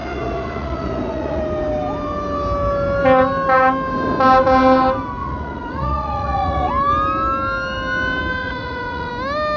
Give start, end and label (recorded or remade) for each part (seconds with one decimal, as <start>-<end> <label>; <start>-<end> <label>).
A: 0.0-1.4 remade; 1.4-5.2 recorded; 5.2-6.7 remade; 6.7-8.4 recorded; 8.4-9.1 remade; 9.1-9.6 recorded